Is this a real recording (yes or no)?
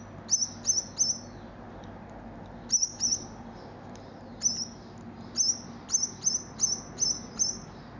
yes